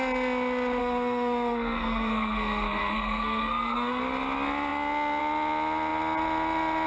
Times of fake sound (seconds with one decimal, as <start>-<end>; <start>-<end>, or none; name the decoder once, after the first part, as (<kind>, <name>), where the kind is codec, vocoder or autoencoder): 0.8-4.0 (codec, SNAC)